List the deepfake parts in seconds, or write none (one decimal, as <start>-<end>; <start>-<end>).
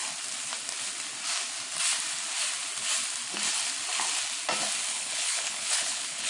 4.9-6.3